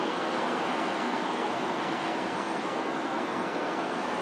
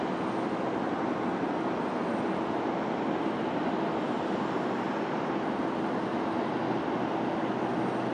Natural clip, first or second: second